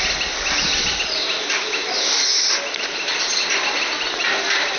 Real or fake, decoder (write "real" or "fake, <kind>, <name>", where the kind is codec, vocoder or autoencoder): real